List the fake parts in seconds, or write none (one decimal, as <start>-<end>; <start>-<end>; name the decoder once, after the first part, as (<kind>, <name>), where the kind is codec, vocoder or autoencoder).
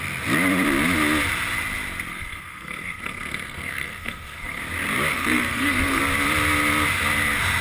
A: 2.1-4.6 (codec, SNAC); 5.1-6.0